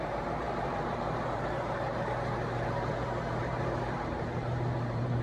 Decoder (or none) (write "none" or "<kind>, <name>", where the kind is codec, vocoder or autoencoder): vocoder, BigVGAN v2